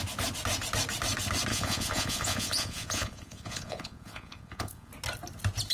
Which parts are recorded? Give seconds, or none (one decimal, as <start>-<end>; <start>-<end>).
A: 0.0-1.5; 4.9-5.7